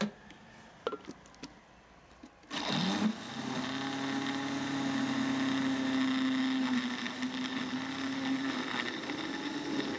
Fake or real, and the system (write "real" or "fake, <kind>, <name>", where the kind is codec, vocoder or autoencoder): real